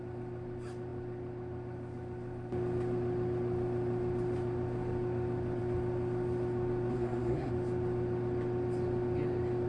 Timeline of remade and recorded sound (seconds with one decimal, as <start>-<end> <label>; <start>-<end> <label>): 0.0-6.9 recorded; 6.9-7.5 remade; 7.5-9.7 recorded